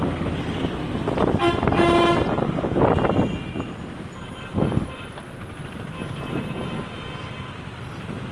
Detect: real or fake real